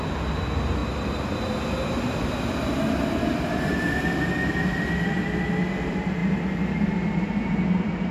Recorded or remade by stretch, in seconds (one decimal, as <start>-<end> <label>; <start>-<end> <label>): 0.0-8.1 recorded